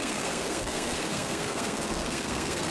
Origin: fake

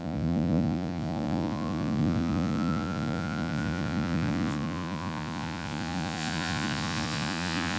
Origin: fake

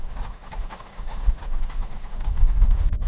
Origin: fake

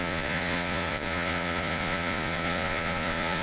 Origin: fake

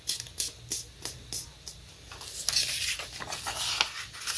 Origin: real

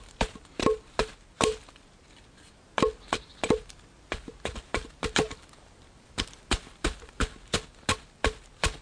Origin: real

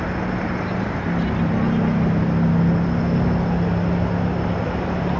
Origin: real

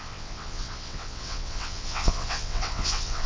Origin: fake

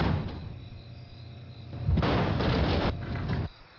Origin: fake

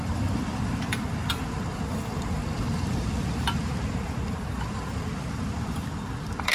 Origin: fake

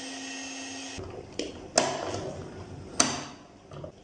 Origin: real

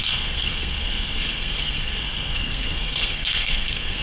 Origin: fake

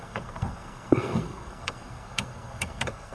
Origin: fake